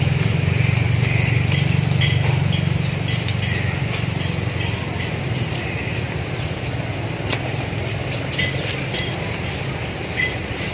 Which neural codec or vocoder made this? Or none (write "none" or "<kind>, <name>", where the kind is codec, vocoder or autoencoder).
none